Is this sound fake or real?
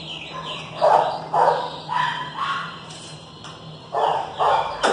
fake